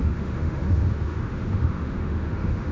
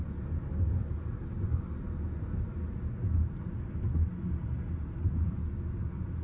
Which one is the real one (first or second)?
second